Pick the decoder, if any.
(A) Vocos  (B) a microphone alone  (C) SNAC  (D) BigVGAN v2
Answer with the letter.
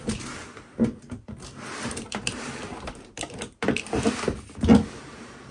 D